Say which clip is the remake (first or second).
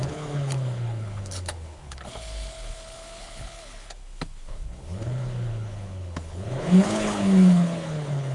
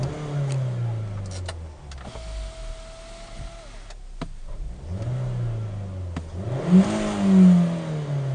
first